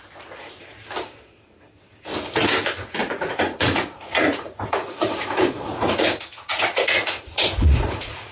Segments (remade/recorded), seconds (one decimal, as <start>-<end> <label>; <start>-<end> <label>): 0.0-3.0 recorded; 3.0-8.3 remade